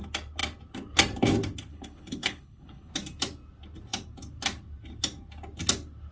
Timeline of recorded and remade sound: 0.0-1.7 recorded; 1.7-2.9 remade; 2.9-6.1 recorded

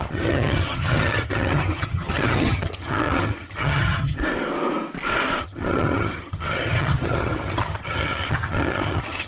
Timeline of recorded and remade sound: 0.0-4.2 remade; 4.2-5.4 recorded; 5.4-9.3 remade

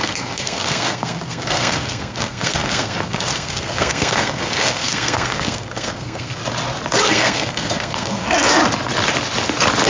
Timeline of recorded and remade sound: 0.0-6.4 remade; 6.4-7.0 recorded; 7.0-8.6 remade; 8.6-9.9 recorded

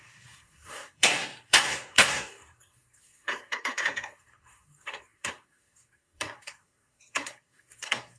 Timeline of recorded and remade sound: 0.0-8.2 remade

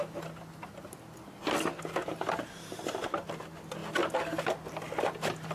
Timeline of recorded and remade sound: 0.0-2.0 recorded; 2.0-3.3 remade; 3.3-5.5 recorded